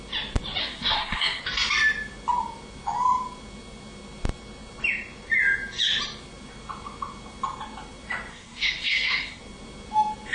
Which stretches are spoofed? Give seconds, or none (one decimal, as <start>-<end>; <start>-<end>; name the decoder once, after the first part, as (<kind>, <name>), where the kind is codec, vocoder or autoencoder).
0.6-1.4 (codec, SNAC); 8.3-9.4